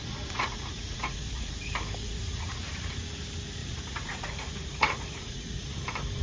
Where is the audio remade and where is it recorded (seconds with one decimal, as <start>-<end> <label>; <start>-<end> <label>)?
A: 0.0-1.5 remade; 1.5-2.0 recorded; 2.0-2.7 remade; 2.7-3.6 recorded; 3.6-5.7 remade; 5.7-6.2 recorded

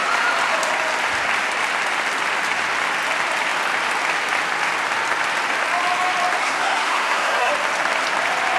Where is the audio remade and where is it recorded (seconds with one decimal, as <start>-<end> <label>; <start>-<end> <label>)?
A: 0.0-6.4 recorded; 6.4-7.5 remade; 7.5-8.6 recorded

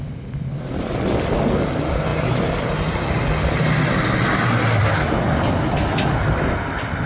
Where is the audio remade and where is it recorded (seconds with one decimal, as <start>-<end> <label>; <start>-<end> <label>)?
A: 0.0-7.1 recorded

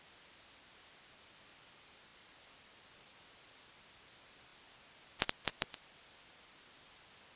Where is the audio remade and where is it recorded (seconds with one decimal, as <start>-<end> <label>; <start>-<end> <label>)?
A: 0.0-7.4 recorded

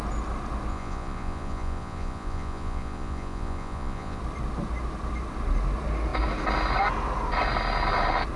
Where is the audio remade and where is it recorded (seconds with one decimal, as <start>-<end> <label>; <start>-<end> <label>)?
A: 0.0-0.7 recorded; 0.7-4.2 remade; 4.2-8.4 recorded

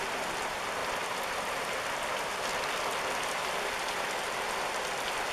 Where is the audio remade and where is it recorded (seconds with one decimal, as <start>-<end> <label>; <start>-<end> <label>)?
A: 0.0-5.3 recorded

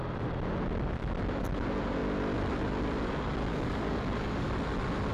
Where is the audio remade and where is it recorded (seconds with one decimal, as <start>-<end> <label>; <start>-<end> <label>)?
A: 0.0-3.5 recorded; 3.5-4.5 remade; 4.5-5.1 recorded